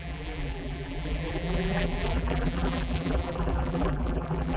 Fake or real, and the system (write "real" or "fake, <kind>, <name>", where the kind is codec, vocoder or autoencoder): fake, vocoder, BigVGAN v2